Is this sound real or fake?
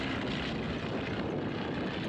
real